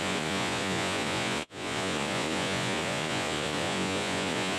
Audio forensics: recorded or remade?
remade